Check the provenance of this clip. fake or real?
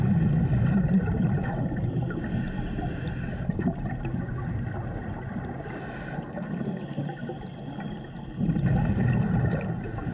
real